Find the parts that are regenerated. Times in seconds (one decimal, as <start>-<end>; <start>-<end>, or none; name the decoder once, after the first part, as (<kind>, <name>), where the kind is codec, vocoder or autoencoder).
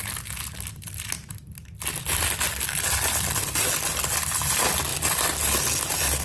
none